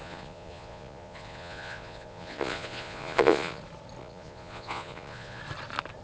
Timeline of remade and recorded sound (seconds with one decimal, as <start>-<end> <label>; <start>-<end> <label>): 0.0-3.6 remade; 3.6-4.0 recorded; 4.0-5.4 remade; 5.4-6.0 recorded